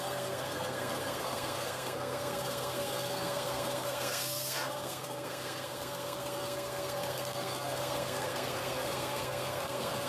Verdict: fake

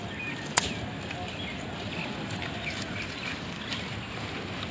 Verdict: real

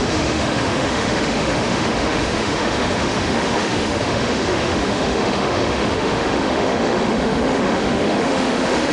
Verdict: fake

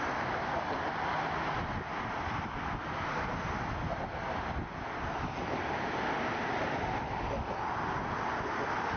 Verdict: real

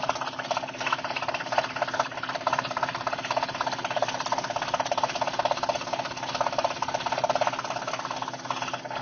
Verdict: real